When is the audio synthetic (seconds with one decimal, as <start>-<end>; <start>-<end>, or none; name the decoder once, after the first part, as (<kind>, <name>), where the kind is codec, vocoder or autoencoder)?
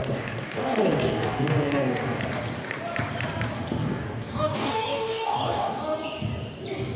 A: 0.0-2.2 (codec, DAC); 3.8-5.8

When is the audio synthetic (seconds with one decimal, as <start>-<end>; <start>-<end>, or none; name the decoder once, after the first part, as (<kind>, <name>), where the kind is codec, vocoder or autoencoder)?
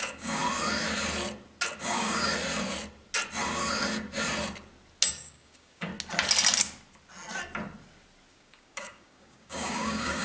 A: 0.0-0.4 (codec, DAC); 1.8-2.3; 5.1-5.9; 8.3-10.2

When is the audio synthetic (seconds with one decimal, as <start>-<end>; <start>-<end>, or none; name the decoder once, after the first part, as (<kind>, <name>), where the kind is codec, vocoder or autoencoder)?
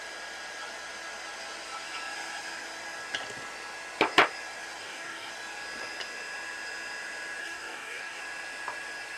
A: 4.8-5.3 (codec, DAC); 7.4-8.2